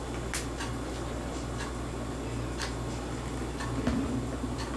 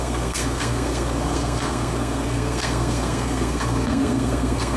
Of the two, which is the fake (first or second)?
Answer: second